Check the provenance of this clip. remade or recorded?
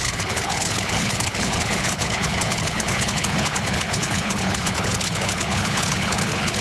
remade